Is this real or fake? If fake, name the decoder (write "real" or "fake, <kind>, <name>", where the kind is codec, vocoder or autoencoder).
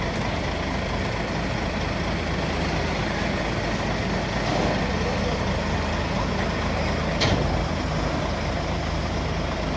real